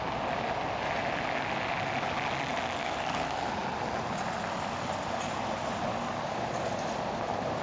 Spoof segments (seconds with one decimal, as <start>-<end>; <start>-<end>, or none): 2.8-3.5; 5.9-6.8